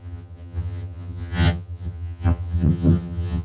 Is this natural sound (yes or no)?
no